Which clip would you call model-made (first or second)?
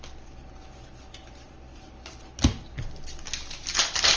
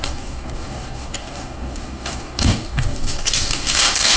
second